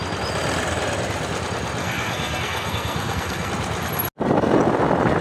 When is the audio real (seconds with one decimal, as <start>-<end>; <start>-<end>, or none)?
0.0-1.8; 3.5-5.2